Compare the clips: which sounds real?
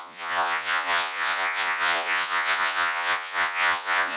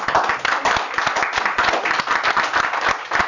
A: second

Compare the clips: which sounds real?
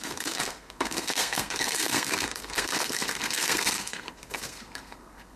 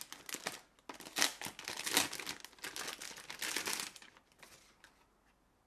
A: second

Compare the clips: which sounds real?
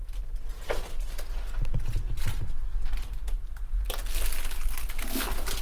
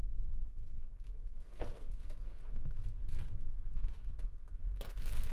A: first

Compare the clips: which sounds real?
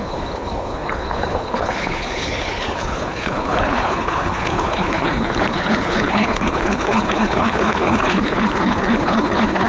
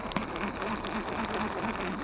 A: second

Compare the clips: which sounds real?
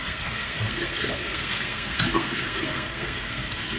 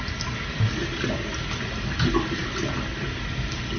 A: second